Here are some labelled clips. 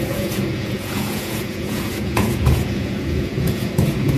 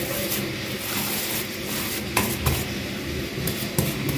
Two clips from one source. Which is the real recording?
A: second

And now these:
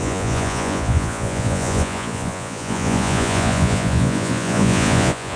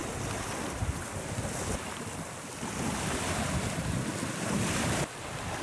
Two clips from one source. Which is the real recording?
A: second